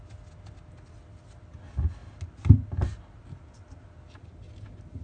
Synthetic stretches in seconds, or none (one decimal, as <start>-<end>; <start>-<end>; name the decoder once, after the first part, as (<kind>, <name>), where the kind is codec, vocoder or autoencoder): none